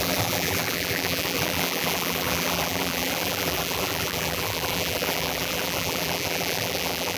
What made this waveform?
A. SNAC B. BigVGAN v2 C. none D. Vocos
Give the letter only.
B